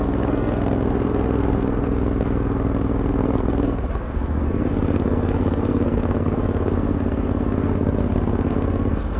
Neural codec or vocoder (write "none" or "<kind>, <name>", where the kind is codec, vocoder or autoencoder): codec, SNAC